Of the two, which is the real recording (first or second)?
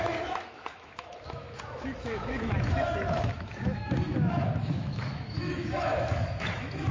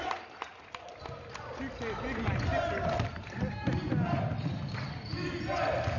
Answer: second